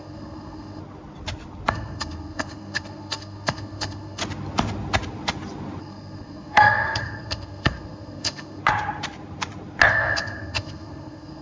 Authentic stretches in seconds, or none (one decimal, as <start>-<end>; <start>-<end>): 0.8-1.7; 4.2-5.8; 8.6-9.9